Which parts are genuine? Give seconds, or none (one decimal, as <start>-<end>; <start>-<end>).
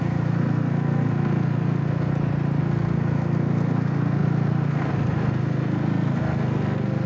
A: 2.1-2.6